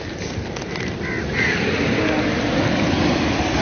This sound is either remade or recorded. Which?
recorded